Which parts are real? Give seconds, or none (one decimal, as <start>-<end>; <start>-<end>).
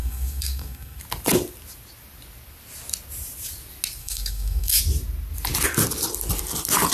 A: 1.0-4.0; 4.8-6.9